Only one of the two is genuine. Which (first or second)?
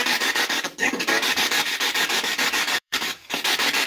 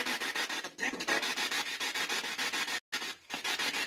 second